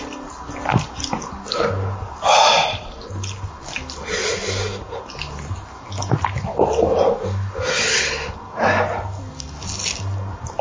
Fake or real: real